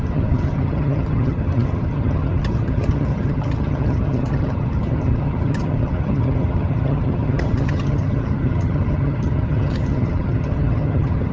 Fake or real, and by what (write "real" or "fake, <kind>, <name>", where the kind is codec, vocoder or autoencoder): fake, vocoder, HiFi-GAN